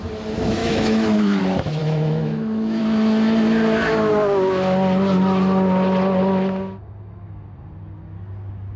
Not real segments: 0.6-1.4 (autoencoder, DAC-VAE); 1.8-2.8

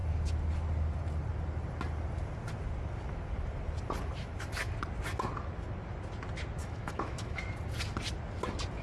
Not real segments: 6.6-7.4 (autoencoder, DAC-VAE)

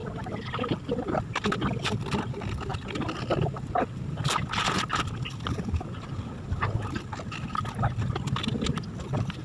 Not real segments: none